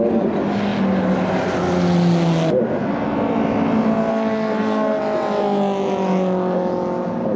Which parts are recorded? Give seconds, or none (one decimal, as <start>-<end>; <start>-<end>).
0.0-4.1; 5.0-7.4